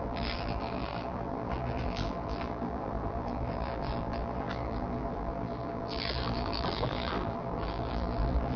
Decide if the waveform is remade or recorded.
remade